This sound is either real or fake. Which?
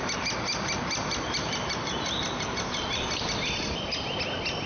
real